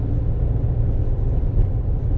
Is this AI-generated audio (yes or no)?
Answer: no